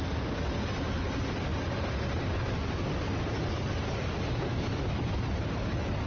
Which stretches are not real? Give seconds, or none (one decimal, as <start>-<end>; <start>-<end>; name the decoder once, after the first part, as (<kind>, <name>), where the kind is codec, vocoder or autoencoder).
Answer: 4.5-5.3 (autoencoder, DAC-VAE)